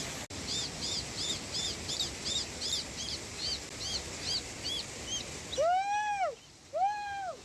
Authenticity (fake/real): real